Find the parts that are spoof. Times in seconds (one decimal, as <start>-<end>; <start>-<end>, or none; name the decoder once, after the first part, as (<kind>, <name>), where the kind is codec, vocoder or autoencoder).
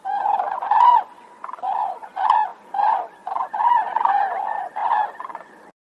0.0-5.9 (vocoder, Vocos)